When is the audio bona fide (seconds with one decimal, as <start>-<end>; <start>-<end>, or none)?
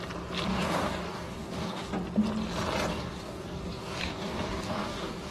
0.0-0.5; 1.9-2.9